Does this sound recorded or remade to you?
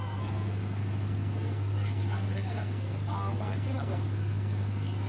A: remade